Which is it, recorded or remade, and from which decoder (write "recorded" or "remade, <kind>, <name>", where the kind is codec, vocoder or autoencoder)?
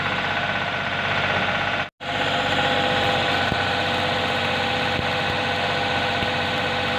recorded